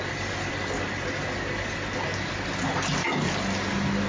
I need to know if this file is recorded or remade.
recorded